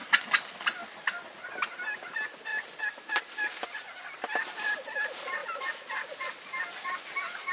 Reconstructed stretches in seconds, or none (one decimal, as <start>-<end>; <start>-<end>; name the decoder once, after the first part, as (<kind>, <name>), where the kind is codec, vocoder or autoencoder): none